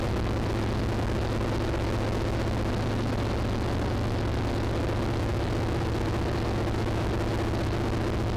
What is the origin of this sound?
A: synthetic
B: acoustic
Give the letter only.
B